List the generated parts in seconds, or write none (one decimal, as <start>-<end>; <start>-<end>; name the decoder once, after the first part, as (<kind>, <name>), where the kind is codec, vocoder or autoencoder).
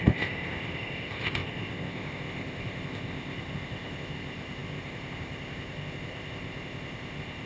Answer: 0.0-7.5 (codec, ZipCodec)